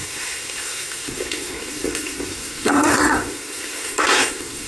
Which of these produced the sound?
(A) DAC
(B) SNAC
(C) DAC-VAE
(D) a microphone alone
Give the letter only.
B